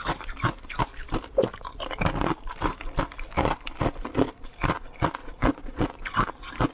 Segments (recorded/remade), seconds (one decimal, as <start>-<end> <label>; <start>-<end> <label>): 0.0-5.2 recorded; 5.2-5.8 remade; 5.8-6.7 recorded

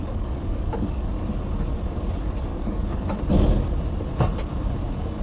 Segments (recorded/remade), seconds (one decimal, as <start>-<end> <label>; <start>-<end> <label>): 0.0-1.1 remade; 1.1-2.5 recorded; 2.5-3.2 remade; 3.2-5.2 recorded

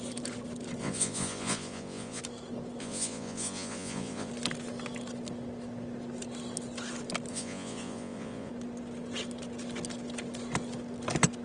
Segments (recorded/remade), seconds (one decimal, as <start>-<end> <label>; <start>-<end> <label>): 0.0-0.8 recorded; 0.8-2.2 remade; 2.2-2.8 recorded; 2.8-4.3 remade; 4.3-7.3 recorded; 7.3-8.5 remade; 8.5-11.4 recorded

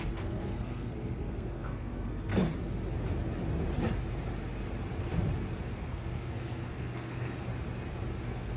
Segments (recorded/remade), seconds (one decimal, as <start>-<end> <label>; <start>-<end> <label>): 0.0-2.3 remade; 2.3-5.6 recorded; 5.6-7.5 remade; 7.5-8.2 recorded; 8.2-8.6 remade

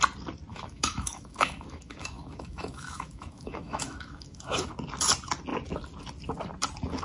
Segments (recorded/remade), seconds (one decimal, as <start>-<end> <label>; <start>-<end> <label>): 0.0-0.5 recorded; 0.5-4.7 remade; 4.7-7.0 recorded